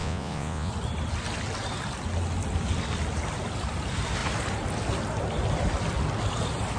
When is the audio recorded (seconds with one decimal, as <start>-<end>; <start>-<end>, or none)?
0.7-6.8